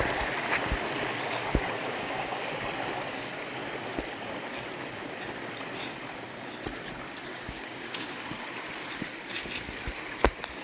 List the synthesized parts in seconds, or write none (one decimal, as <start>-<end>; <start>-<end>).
1.4-2.5; 7.3-8.1